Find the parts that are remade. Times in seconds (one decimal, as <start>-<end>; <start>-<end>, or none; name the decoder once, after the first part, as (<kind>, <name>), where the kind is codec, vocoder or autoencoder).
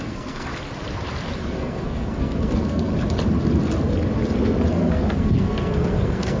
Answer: 0.0-0.5 (codec, SNAC); 1.4-2.9; 4.7-6.4